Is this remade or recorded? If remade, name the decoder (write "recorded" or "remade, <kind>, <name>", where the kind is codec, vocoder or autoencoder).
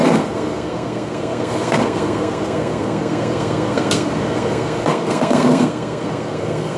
remade, codec, SNAC